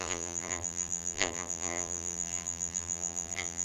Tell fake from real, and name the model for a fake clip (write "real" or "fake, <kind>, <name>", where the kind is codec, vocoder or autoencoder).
fake, vocoder, BigVGAN v2